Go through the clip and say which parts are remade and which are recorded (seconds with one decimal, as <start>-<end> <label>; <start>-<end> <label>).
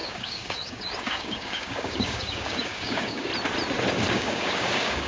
0.0-3.3 remade; 3.3-4.1 recorded; 4.1-5.1 remade